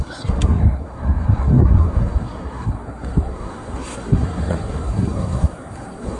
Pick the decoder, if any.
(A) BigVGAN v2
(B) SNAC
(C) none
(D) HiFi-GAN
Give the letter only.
B